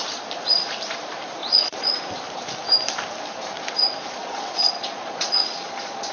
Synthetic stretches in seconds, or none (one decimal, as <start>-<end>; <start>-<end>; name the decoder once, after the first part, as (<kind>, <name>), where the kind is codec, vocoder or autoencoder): 1.4-1.9 (vocoder, Vocos); 4.2-6.1